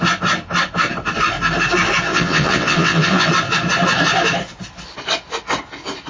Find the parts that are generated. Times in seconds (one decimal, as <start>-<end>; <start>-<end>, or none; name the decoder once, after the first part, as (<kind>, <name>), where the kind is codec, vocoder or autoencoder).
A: 2.1-3.3 (vocoder, WaveNeXt)